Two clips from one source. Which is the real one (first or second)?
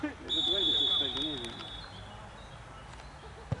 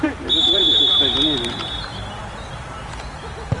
first